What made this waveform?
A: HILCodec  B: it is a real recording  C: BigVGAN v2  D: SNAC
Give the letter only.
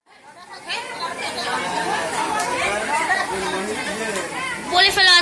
B